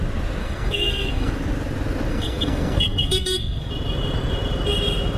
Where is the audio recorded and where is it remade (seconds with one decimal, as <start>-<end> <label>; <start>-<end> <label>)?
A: 0.0-0.4 recorded; 0.4-1.3 remade; 1.3-2.1 recorded; 2.1-3.7 remade; 3.7-5.2 recorded